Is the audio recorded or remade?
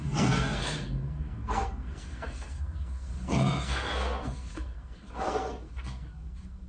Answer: remade